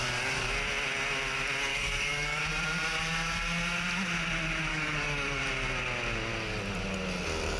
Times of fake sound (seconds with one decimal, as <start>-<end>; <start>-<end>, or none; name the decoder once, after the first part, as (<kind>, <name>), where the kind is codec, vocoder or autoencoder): 1.7-2.4 (codec, DAC); 4.7-5.4